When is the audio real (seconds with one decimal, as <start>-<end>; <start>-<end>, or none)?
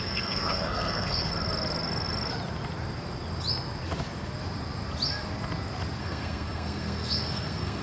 1.3-6.0